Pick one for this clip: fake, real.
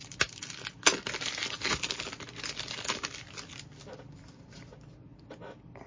real